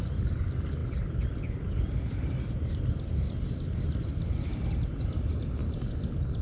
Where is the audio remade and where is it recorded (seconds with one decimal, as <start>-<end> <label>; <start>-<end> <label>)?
0.0-6.4 recorded